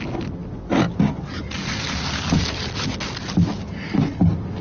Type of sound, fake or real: real